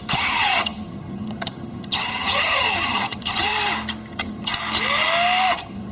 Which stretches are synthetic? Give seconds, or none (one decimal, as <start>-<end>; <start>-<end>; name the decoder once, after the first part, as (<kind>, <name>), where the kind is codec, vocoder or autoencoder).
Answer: 0.0-3.5 (vocoder, HiFi-GAN); 4.1-4.5; 5.5-5.9